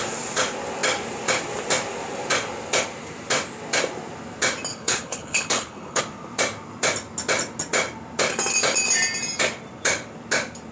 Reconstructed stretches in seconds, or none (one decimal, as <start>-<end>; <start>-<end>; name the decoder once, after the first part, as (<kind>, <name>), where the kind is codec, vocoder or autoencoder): 4.7-6.0 (codec, HILCodec)